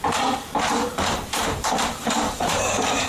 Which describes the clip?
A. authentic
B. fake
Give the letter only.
B